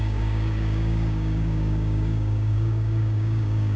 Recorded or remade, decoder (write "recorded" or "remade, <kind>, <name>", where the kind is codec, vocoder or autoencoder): remade, codec, DAC